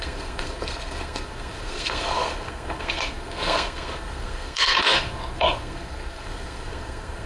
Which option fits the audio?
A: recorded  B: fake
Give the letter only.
B